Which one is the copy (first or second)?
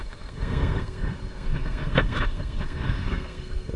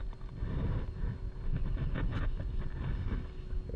first